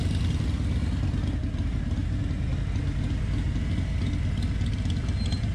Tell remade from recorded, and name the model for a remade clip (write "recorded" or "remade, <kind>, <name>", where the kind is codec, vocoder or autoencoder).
recorded